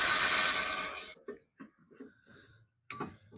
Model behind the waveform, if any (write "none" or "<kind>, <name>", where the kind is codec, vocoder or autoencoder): none